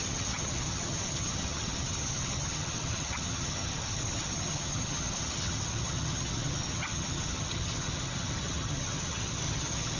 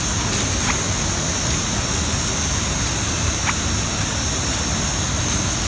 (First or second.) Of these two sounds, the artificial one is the first